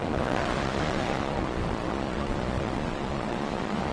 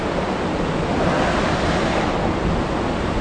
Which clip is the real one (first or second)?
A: second